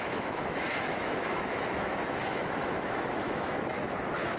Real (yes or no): no